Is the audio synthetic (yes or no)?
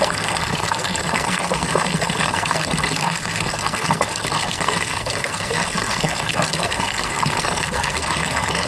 yes